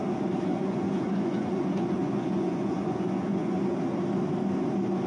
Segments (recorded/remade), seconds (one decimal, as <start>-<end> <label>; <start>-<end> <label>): 0.0-0.5 recorded; 0.5-3.6 remade; 3.6-5.1 recorded